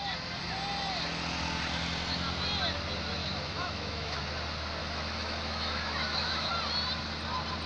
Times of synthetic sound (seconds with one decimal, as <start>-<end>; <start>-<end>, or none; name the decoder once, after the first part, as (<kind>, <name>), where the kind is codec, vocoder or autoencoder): 3.2-4.2 (autoencoder, DAC-VAE); 4.8-6.5